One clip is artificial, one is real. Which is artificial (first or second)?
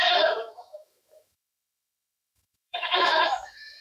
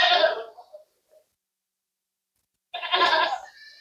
first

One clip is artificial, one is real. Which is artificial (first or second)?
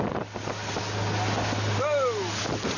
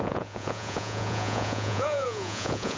second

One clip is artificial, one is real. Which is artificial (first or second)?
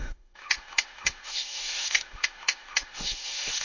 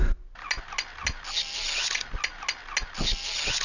first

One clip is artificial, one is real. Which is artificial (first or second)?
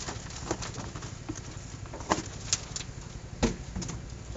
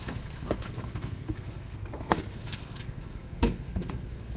second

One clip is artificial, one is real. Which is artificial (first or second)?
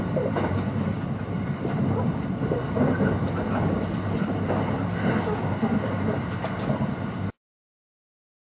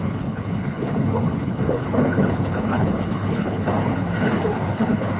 second